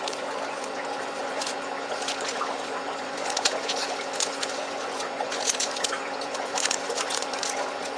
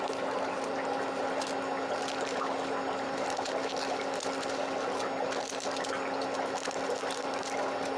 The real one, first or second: second